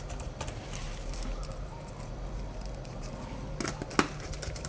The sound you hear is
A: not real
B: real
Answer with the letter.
B